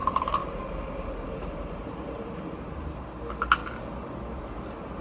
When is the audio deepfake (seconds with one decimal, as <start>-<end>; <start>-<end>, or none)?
0.0-3.0